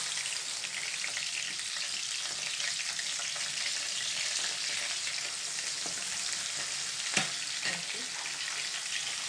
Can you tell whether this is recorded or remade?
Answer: recorded